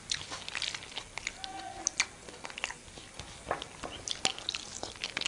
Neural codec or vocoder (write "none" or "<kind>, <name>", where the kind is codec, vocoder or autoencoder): none